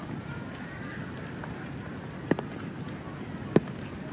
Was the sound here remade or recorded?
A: recorded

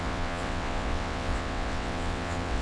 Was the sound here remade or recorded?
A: remade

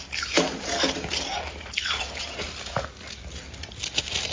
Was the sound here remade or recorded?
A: recorded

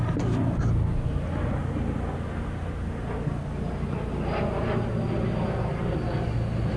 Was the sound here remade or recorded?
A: recorded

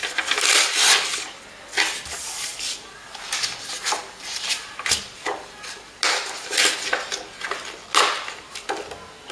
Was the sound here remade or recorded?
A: recorded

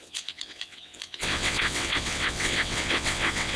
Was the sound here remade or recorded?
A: remade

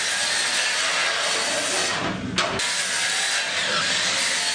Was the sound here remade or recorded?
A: recorded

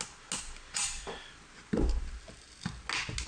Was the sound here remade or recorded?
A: recorded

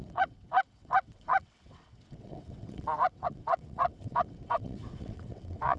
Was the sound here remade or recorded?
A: remade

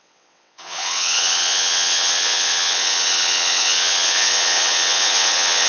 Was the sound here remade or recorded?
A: remade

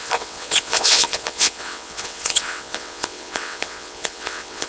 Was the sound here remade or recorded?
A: remade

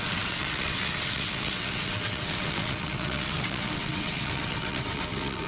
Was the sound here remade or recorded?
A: remade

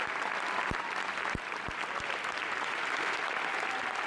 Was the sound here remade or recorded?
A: recorded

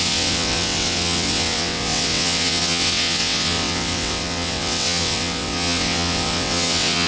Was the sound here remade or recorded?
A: remade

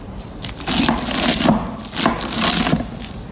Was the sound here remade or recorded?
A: recorded